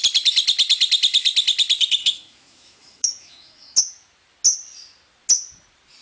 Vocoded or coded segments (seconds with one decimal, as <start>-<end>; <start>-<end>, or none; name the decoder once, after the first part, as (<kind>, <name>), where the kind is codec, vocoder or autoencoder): 2.0-3.8 (autoencoder, DAC-VAE)